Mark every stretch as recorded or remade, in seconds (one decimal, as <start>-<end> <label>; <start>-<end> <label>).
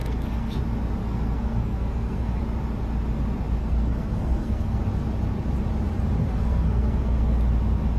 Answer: 0.0-0.6 remade; 0.6-1.0 recorded; 1.0-2.4 remade; 2.4-3.6 recorded; 3.6-4.8 remade; 4.8-6.3 recorded; 6.3-7.4 remade; 7.4-8.0 recorded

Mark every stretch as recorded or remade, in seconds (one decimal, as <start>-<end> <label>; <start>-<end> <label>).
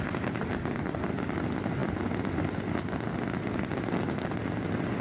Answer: 0.0-5.0 recorded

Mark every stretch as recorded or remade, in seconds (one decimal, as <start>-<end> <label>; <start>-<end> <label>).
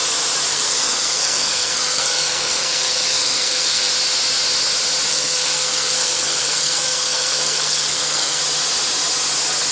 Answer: 0.0-0.5 recorded; 0.5-3.9 remade; 3.9-5.1 recorded; 5.1-8.4 remade; 8.4-9.7 recorded